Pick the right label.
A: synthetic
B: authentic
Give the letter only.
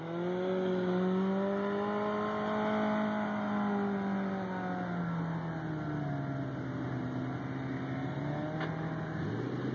B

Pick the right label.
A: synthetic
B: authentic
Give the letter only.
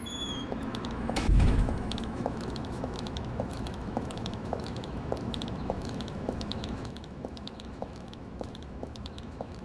A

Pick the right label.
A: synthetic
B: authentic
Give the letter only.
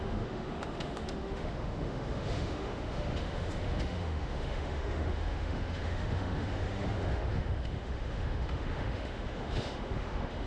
A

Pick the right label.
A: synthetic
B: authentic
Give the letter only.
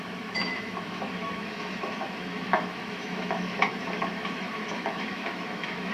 A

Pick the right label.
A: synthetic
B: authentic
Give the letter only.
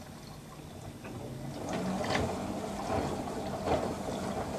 B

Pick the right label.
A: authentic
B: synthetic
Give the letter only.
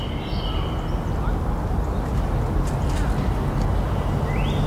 A